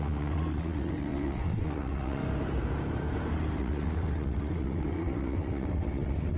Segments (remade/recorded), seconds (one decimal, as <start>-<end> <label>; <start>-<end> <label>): 0.0-2.2 remade; 2.2-3.6 recorded; 3.6-6.4 remade